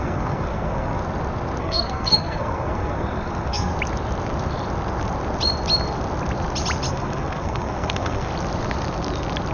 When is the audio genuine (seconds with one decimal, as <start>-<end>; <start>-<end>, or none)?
1.0-1.6; 3.7-6.9; 8.3-9.5